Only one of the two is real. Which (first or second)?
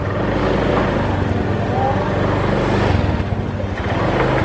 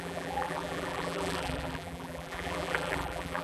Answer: first